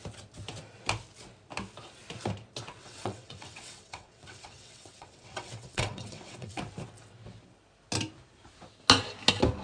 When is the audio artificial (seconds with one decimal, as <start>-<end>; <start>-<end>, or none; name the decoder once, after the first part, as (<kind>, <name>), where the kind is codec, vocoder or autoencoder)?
2.8-6.6 (vocoder, WaveNeXt)